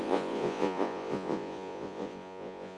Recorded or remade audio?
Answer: remade